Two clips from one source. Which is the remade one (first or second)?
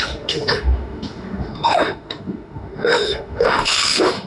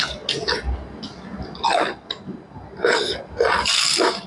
first